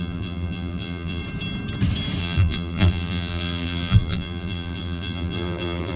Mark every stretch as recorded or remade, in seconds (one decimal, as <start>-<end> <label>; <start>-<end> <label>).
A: 0.0-1.2 remade; 1.2-2.2 recorded; 2.2-6.0 remade